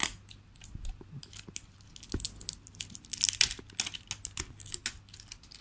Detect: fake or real real